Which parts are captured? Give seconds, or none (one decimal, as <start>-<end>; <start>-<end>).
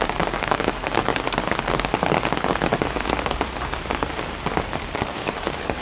1.1-4.6